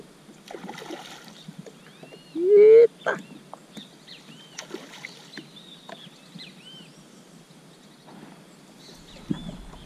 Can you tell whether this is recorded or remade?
recorded